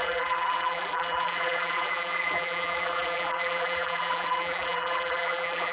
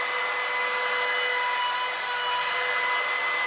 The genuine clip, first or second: second